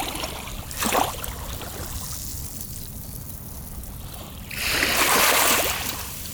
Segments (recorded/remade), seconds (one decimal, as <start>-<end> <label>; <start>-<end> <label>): 0.0-6.3 recorded